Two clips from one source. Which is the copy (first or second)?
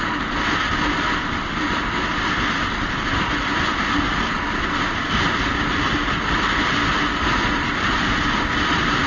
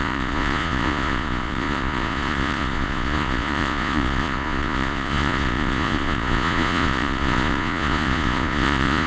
second